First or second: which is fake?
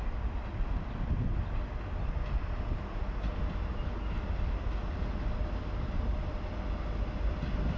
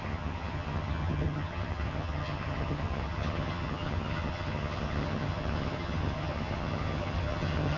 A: second